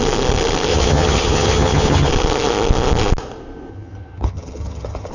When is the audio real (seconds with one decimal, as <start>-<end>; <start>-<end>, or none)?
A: 0.0-0.7; 2.1-3.7